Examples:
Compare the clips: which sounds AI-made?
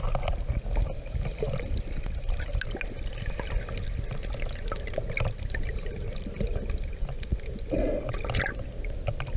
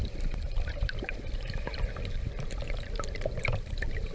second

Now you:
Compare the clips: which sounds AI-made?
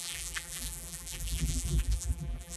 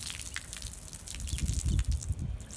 first